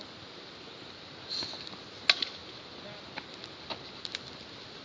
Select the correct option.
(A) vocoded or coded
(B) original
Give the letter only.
B